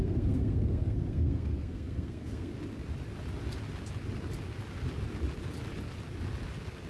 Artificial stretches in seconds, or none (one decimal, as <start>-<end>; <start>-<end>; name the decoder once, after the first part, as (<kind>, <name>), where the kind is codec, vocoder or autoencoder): 0.0-2.5 (codec, SNAC)